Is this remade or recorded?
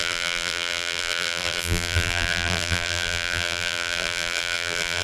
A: remade